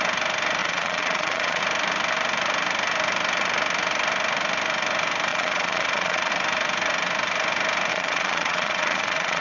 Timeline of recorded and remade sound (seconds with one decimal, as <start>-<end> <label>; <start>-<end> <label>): 0.0-0.6 recorded; 0.6-1.6 remade; 1.6-5.3 recorded; 5.3-6.3 remade; 6.3-7.9 recorded; 7.9-9.4 remade